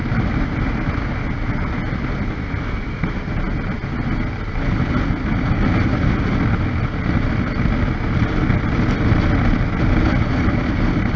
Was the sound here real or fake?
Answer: real